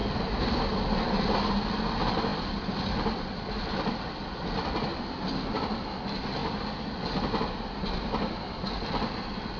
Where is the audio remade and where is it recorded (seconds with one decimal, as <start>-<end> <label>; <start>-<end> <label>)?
0.0-9.6 recorded